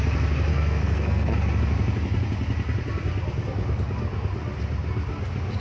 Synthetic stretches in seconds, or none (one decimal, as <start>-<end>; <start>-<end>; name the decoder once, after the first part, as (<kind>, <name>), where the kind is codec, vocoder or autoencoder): 0.5-1.3 (codec, SNAC)

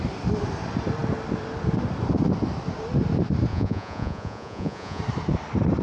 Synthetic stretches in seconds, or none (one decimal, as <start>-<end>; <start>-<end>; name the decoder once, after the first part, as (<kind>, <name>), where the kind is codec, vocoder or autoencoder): 3.5-5.0 (vocoder, Vocos)